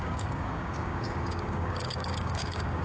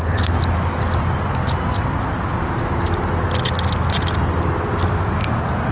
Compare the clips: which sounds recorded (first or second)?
second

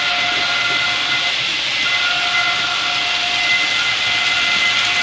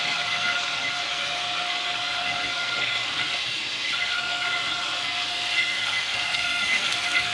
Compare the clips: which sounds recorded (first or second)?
first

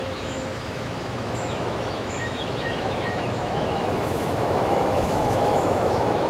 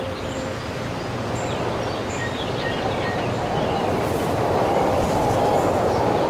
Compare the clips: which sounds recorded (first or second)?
second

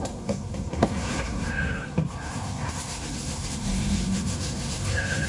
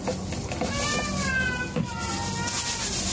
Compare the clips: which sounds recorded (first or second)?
second